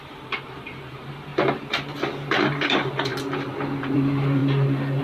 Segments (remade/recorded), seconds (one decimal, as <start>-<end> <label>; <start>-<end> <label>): 0.0-1.3 remade; 1.3-2.3 recorded; 2.3-3.1 remade; 3.1-3.8 recorded; 3.8-4.4 remade; 4.4-5.0 recorded